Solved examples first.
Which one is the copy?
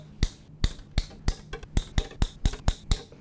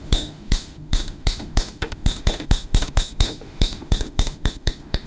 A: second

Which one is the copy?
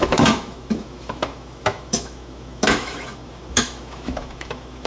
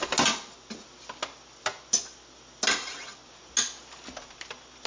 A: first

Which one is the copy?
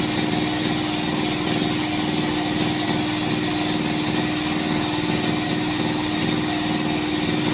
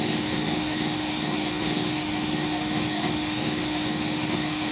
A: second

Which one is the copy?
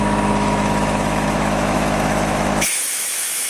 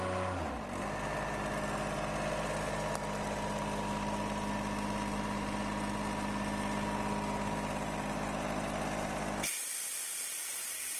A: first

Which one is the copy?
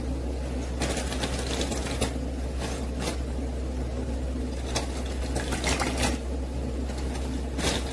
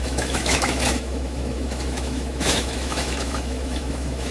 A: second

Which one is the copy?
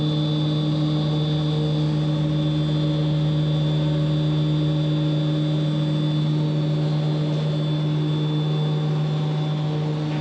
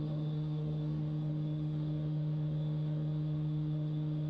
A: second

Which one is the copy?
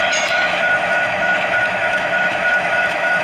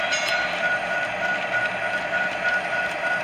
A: first